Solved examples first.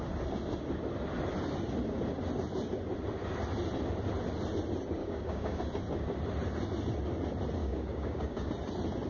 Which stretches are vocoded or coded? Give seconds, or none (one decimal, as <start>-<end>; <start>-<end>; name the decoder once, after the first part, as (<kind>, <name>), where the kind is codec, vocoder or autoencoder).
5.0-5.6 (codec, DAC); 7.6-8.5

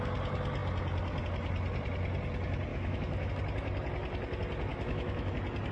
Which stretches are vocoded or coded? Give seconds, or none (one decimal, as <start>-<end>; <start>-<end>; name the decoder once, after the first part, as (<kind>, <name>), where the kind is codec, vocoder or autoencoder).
2.7-3.3 (autoencoder, DAC-VAE); 4.7-5.3

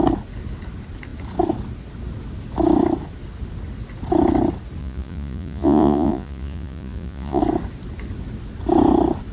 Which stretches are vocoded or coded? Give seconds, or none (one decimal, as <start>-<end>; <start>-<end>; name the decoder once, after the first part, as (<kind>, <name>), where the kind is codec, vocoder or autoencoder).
4.8-7.4 (vocoder, Vocos)

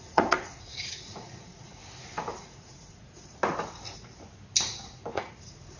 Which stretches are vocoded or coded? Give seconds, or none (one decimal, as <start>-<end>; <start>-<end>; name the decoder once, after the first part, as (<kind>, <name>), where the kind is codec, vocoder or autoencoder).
0.0-1.8 (vocoder, Vocos); 2.4-3.4; 5.1-5.8